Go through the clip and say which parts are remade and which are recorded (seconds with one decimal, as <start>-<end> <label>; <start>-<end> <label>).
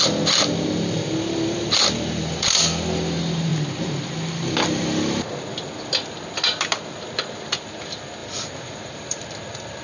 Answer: 0.0-8.2 recorded; 8.2-9.2 remade; 9.2-9.8 recorded